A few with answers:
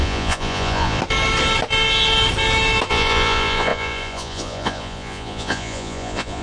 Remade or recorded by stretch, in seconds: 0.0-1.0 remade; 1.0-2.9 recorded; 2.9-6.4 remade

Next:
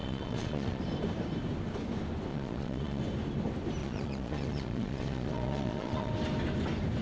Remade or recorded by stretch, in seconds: 0.0-0.8 remade; 0.8-2.3 recorded; 2.3-3.0 remade; 3.0-3.8 recorded; 3.8-6.1 remade; 6.1-7.0 recorded

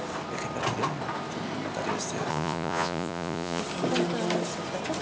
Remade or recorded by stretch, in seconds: 0.0-2.3 recorded; 2.3-3.6 remade; 3.6-5.0 recorded

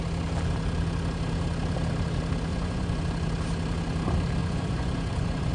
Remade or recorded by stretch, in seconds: 0.0-2.5 recorded; 2.5-3.0 remade; 3.0-4.4 recorded; 4.4-5.5 remade